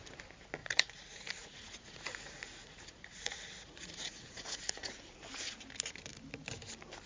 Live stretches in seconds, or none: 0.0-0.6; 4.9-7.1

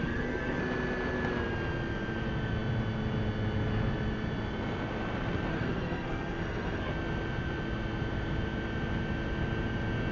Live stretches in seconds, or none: 0.6-5.5; 6.9-10.1

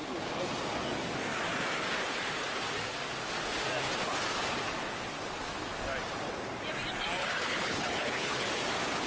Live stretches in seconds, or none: 0.0-7.2; 8.6-9.1

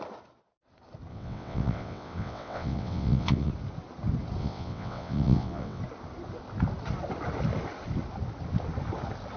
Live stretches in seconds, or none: 0.0-1.1; 3.5-4.4; 5.8-9.4

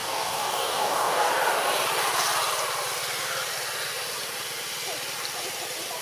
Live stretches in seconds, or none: 1.3-6.0

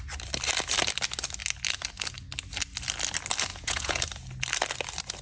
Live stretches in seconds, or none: 0.0-3.5; 4.0-5.2